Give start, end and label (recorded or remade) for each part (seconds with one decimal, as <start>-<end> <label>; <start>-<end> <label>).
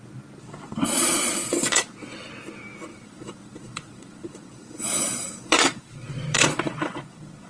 0.0-0.4 recorded; 0.4-2.3 remade; 2.3-2.9 recorded; 2.9-7.5 remade